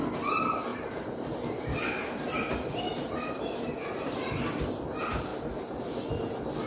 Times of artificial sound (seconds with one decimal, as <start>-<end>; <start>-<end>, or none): 0.7-4.7